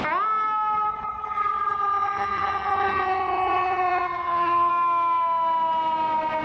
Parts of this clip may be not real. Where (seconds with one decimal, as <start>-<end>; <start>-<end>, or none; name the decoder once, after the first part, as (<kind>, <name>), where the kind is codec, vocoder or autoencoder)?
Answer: 0.9-4.7 (vocoder, HiFi-GAN)